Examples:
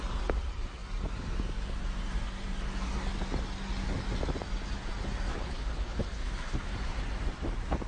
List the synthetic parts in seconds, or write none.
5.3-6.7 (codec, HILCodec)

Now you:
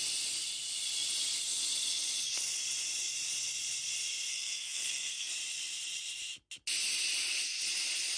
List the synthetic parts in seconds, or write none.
4.3-5.3 (codec, SNAC)

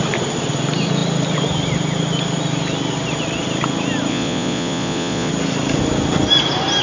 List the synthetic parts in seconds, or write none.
4.1-5.3 (vocoder, Vocos)

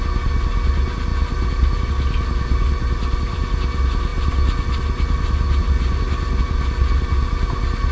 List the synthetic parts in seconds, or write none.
none

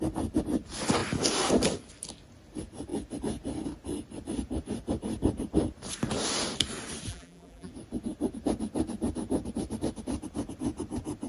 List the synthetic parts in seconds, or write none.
7.1-7.7 (vocoder, BigVGAN v2)